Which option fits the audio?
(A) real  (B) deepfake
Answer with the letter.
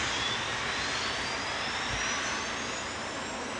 A